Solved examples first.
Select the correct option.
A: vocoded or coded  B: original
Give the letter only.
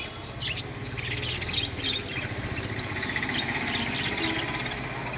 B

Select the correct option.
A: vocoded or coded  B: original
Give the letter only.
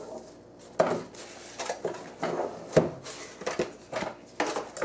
B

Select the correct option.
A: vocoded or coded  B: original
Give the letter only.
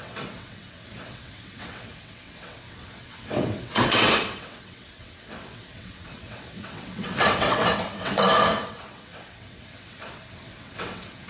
A